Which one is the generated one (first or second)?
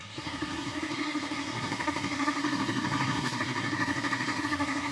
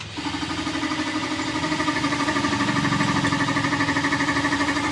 first